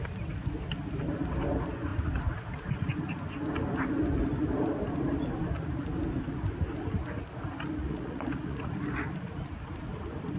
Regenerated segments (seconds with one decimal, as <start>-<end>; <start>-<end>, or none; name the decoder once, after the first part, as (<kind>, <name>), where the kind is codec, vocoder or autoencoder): 7.8-8.7 (vocoder, Vocos)